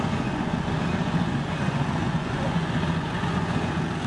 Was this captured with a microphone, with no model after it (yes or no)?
no